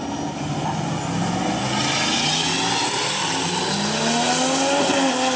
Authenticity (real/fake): real